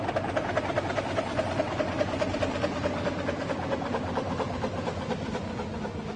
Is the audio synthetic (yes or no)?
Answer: no